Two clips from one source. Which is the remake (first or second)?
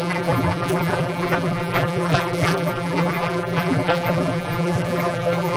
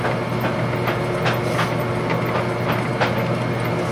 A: first